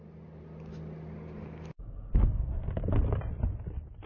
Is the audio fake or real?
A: real